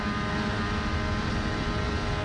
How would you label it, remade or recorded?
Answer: recorded